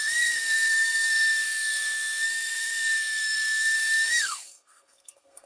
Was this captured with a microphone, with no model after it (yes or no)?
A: no